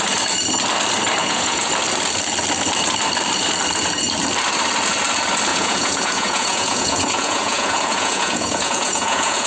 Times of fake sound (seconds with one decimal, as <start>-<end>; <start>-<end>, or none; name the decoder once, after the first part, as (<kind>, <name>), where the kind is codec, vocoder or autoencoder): 1.2-1.7 (vocoder, Vocos); 5.5-9.5